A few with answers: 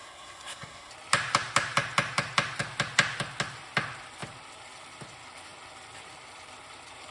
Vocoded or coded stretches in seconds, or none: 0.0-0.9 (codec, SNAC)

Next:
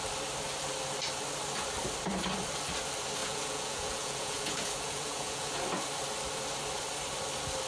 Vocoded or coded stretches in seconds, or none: 3.2-5.6 (vocoder, Vocos)

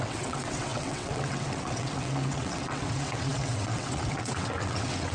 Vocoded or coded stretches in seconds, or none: 0.0-5.1 (vocoder, WaveNeXt)

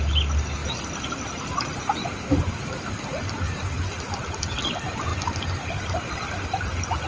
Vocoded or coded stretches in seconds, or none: 0.6-3.7 (vocoder, BigVGAN v2); 5.1-6.0